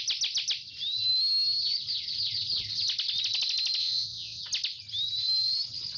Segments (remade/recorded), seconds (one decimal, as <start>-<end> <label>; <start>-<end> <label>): 0.0-3.8 recorded; 3.8-4.4 remade; 4.4-6.0 recorded